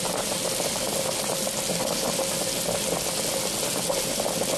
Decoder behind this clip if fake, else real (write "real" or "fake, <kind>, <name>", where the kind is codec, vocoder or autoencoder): real